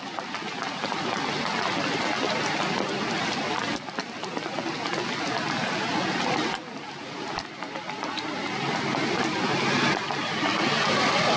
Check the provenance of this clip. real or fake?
real